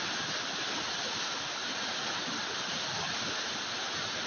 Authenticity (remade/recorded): recorded